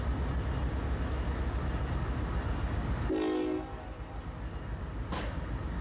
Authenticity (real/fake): real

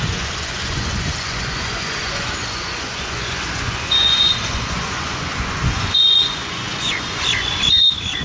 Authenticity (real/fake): fake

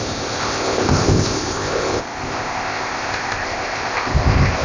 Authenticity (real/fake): fake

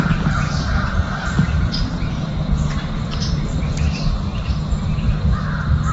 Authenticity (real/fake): real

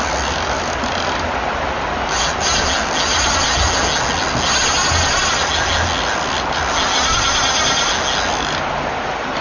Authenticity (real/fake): real